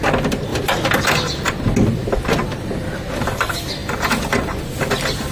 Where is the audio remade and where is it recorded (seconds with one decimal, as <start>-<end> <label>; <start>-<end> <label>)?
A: 0.0-5.3 recorded